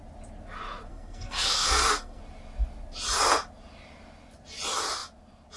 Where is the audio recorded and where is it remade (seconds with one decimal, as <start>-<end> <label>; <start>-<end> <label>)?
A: 0.0-0.9 recorded; 0.9-2.2 remade; 2.2-5.6 recorded